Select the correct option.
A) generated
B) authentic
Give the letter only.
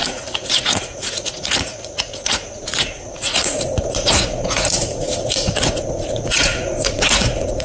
A